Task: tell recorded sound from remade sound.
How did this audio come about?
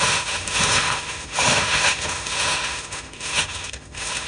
remade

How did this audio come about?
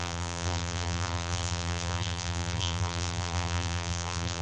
remade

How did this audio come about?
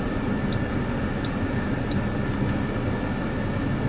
recorded